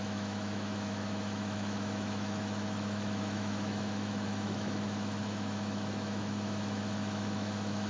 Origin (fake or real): fake